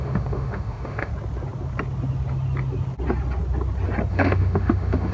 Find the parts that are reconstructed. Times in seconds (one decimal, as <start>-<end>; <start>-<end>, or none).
0.0-1.1; 4.1-5.1